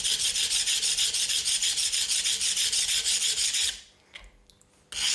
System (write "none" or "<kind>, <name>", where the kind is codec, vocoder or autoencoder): none